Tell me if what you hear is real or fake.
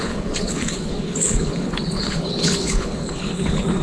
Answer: fake